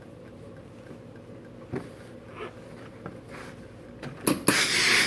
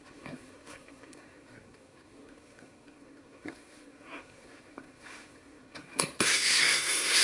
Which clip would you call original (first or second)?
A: first